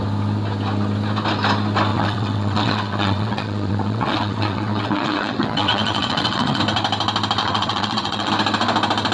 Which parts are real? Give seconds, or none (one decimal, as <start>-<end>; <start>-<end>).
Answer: 0.0-1.9; 6.6-7.4; 8.3-9.1